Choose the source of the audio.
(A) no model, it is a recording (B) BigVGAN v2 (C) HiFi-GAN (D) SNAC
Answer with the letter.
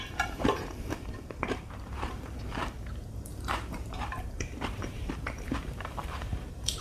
B